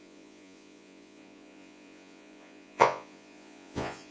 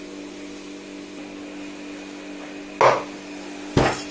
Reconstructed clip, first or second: first